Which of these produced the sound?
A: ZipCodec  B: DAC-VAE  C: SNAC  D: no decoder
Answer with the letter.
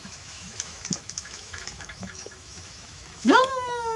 B